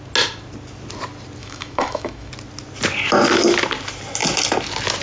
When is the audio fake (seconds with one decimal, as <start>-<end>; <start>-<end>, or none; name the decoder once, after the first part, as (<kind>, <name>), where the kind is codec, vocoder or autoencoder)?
1.4-2.3 (autoencoder, DAC-VAE)